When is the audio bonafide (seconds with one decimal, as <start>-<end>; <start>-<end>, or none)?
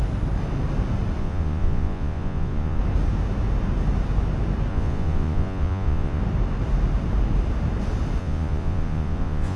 0.0-1.2; 2.8-4.7; 6.2-8.2